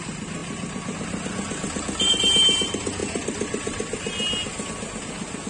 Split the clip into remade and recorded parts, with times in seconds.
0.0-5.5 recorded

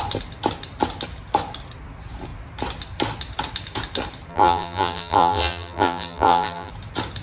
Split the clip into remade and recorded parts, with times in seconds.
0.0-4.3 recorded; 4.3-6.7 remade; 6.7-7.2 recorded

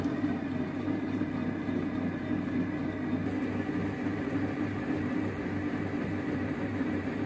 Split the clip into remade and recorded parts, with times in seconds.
0.0-1.4 remade; 1.4-4.1 recorded; 4.1-7.3 remade